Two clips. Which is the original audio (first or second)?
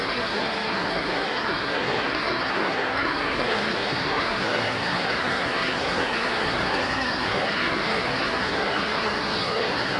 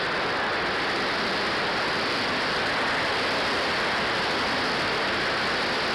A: second